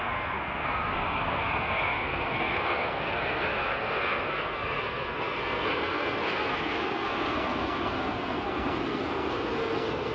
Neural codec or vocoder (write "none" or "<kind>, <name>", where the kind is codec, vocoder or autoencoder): codec, SNAC